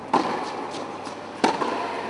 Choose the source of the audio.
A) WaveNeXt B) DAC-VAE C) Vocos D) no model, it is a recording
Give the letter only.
D